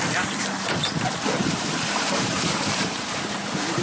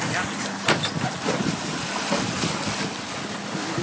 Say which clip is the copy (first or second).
first